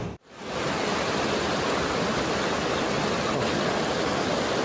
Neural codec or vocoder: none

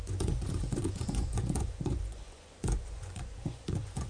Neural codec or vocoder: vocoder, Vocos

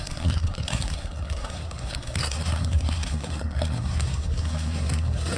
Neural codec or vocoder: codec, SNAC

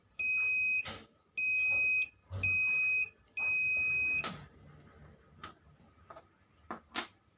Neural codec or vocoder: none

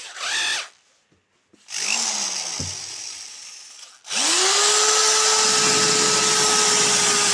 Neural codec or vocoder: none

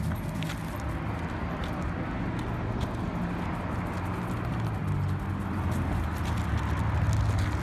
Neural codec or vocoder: none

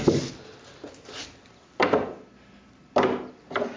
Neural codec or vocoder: none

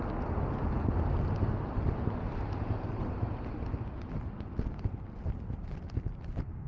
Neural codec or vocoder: none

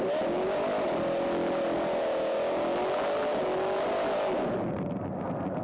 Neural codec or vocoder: none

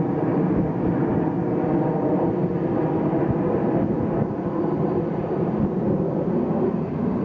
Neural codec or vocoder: none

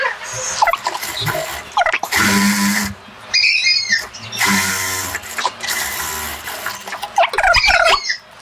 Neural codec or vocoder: none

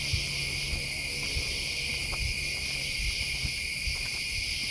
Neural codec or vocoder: none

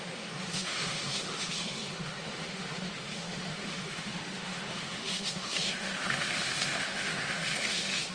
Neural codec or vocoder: autoencoder, DAC-VAE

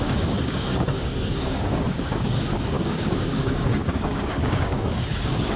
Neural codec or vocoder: codec, DAC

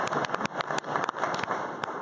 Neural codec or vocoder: none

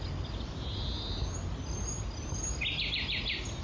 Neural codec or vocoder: none